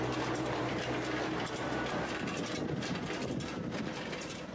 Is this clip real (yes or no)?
no